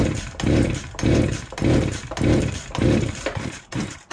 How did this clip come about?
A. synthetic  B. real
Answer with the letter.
A